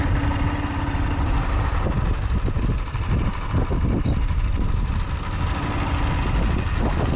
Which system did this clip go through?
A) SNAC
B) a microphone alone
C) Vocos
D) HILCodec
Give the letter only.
B